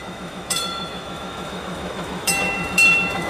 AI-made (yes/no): yes